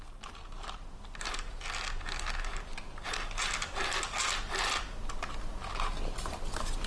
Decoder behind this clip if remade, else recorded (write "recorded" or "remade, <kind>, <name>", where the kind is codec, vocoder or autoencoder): recorded